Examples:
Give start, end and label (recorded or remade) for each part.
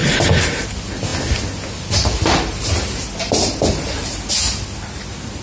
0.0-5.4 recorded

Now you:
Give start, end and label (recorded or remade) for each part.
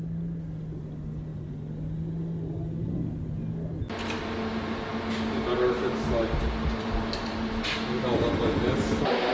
0.0-9.3 recorded